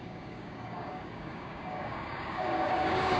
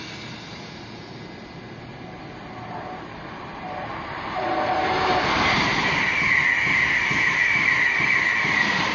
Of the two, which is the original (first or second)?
second